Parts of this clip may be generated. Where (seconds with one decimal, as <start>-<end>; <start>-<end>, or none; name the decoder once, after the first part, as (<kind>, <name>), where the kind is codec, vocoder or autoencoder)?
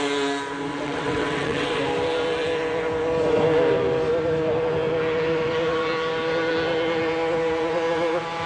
0.7-1.8 (vocoder, WaveNeXt)